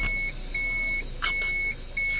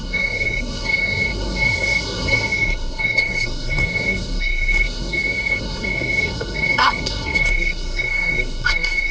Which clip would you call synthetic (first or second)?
second